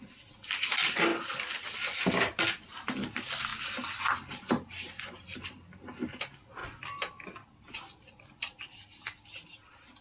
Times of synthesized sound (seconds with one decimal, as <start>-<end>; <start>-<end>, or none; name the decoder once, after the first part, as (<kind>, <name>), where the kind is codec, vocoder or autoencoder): 0.0-1.1 (vocoder, BigVGAN v2); 1.7-6.6; 8.1-10.0